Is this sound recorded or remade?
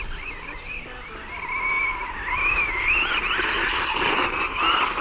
recorded